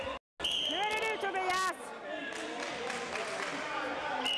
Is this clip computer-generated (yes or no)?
no